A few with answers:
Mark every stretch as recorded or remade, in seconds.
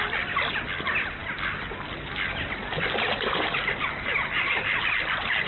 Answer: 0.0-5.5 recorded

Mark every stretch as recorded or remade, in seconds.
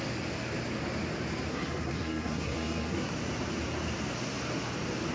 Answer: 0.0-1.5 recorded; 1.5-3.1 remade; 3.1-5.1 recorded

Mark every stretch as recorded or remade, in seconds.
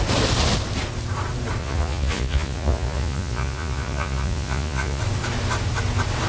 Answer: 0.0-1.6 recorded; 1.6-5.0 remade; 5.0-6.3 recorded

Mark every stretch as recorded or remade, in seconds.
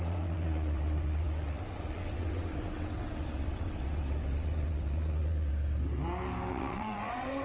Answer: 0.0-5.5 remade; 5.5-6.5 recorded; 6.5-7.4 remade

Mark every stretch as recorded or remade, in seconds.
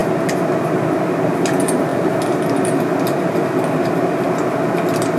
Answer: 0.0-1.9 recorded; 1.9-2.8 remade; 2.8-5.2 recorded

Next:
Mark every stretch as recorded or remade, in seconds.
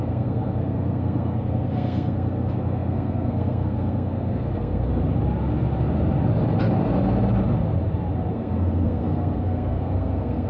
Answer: 0.0-4.9 remade; 4.9-8.3 recorded; 8.3-10.5 remade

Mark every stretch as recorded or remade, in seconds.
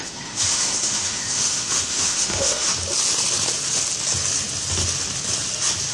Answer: 0.0-2.7 remade; 2.7-5.9 recorded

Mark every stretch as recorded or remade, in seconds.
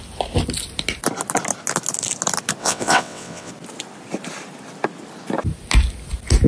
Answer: 0.0-2.6 recorded; 2.6-3.5 remade; 3.5-6.5 recorded